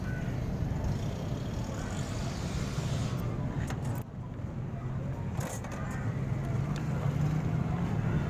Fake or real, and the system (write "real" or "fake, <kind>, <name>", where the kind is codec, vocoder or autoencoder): real